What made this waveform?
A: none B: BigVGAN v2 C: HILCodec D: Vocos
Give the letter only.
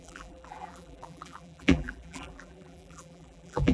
B